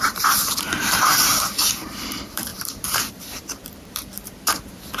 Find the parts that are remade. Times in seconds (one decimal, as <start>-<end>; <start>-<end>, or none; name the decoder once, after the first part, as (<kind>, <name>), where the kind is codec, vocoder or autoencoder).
0.0-5.0 (vocoder, BigVGAN v2)